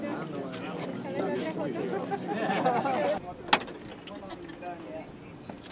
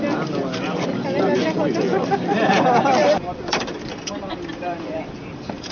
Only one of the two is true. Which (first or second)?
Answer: first